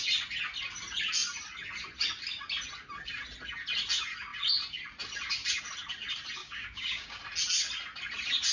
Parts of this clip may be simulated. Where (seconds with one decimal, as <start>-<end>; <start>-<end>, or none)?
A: 6.4-7.2